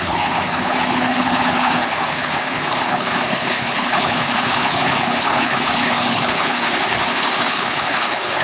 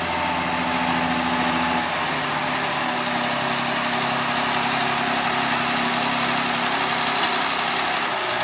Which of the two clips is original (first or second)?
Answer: second